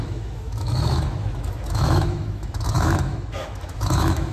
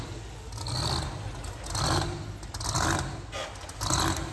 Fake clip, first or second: first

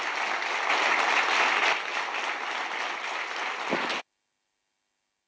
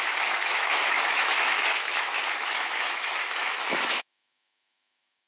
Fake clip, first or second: second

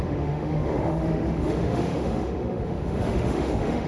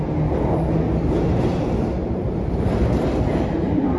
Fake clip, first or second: first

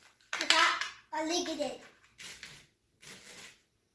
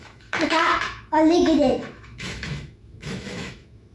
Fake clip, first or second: second